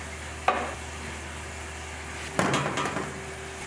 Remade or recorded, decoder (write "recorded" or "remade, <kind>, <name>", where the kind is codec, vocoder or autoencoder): recorded